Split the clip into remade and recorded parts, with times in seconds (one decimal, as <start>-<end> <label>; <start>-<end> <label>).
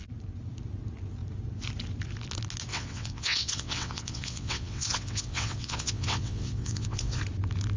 0.0-2.7 recorded; 2.7-7.2 remade; 7.2-7.8 recorded